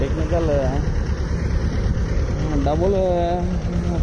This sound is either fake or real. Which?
real